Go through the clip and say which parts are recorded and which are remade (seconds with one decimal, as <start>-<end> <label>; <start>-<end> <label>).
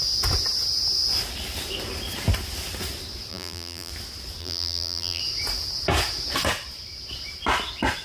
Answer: 0.0-3.3 recorded; 3.3-3.9 remade; 3.9-4.4 recorded; 4.4-5.2 remade; 5.2-8.0 recorded